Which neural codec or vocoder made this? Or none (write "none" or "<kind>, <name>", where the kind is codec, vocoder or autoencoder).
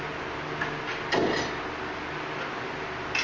none